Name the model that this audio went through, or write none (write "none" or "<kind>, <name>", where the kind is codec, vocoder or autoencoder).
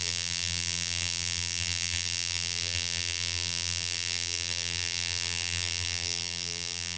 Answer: vocoder, BigVGAN v2